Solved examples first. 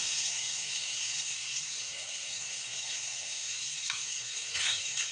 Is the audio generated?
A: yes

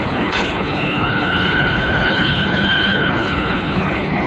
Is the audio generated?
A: yes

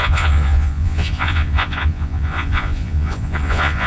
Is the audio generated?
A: yes